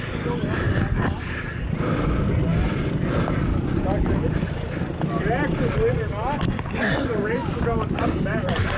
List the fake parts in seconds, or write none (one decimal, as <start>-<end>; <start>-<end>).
none

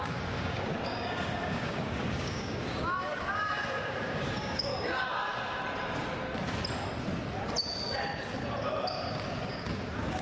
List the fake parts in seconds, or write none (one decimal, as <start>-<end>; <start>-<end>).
0.0-4.7; 9.1-10.2

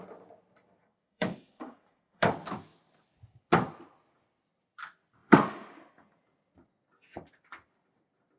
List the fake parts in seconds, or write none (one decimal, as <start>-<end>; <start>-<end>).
0.8-2.3

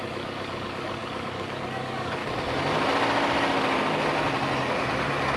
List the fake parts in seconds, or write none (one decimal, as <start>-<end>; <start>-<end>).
0.0-2.2

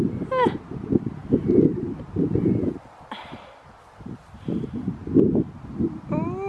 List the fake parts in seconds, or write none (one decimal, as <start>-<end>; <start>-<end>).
none

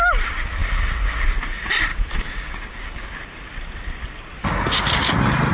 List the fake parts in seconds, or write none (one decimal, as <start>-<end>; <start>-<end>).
1.9-3.1; 4.4-4.9